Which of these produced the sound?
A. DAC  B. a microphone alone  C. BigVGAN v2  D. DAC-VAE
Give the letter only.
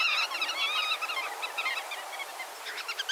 B